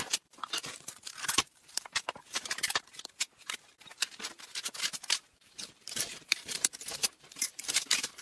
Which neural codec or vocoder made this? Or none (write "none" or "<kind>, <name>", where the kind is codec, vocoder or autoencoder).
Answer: vocoder, BigVGAN v2